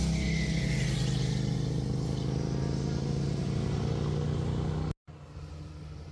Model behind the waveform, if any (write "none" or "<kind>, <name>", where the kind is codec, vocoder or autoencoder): none